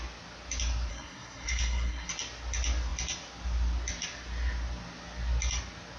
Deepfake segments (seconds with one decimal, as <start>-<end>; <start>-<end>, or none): 0.9-2.1

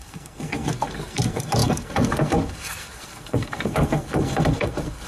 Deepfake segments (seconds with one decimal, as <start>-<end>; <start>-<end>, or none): 0.0-5.1

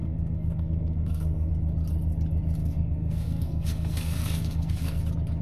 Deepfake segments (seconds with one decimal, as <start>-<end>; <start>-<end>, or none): 0.0-1.5; 2.6-5.0